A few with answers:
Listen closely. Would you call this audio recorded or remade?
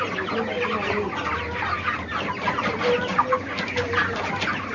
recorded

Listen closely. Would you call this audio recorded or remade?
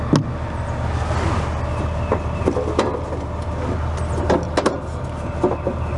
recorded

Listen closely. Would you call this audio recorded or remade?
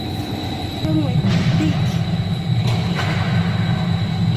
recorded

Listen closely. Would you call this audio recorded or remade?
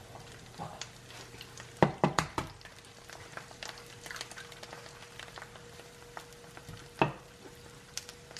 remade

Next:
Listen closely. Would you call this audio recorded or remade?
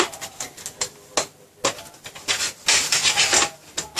recorded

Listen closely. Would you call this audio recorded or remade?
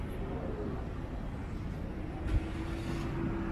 recorded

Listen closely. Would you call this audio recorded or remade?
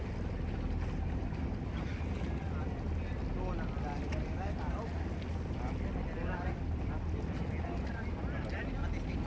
recorded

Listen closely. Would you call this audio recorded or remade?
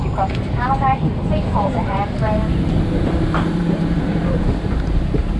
remade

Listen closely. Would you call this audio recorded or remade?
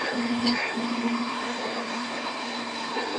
remade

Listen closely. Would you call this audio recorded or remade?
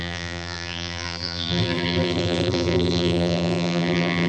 remade